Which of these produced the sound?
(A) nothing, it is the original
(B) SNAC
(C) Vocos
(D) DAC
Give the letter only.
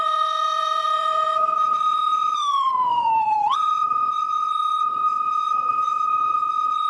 C